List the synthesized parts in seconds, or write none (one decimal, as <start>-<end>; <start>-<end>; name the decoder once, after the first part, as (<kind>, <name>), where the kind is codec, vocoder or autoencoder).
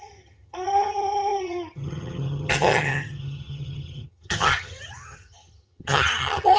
0.0-6.6 (vocoder, HiFi-GAN)